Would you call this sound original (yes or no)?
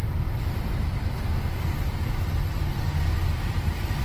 no